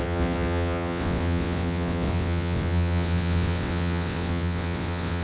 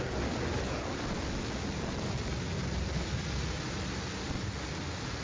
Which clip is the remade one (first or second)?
first